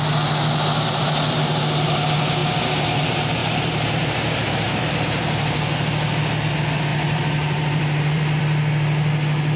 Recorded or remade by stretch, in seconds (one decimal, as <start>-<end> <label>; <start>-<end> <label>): 0.0-3.4 recorded; 3.4-4.8 remade; 4.8-6.9 recorded; 6.9-8.4 remade; 8.4-9.6 recorded